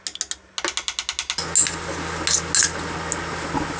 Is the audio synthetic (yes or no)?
no